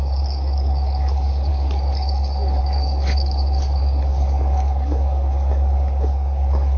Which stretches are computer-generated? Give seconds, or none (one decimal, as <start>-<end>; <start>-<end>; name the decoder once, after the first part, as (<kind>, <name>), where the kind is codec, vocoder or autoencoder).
0.0-6.8 (codec, DAC)